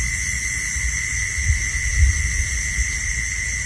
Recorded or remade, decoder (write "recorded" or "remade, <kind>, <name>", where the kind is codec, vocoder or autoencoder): recorded